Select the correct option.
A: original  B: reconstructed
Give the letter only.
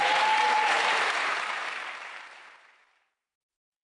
B